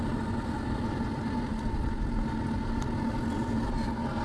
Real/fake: real